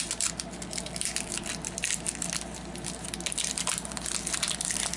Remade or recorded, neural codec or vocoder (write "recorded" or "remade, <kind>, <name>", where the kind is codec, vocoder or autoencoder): recorded